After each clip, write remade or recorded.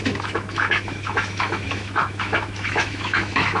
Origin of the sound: remade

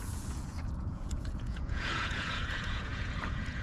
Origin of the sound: remade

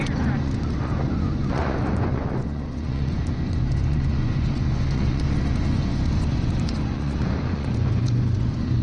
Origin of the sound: remade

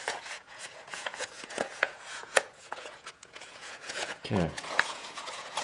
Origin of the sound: remade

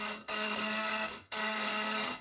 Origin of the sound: remade